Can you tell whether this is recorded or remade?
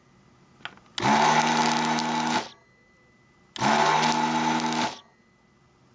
recorded